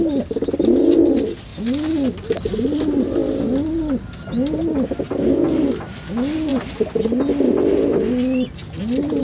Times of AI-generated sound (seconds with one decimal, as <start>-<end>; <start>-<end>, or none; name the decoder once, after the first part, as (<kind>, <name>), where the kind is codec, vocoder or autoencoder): none